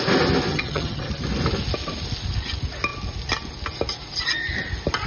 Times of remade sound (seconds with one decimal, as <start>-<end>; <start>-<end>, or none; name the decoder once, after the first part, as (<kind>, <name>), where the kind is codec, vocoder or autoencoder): 0.5-1.1 (vocoder, HiFi-GAN)